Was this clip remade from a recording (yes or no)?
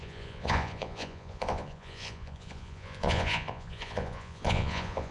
yes